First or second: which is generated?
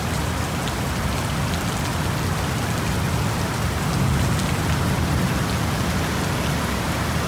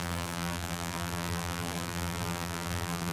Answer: second